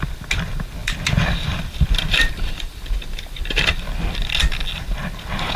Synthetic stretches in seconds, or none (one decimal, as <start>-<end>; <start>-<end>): 0.8-4.2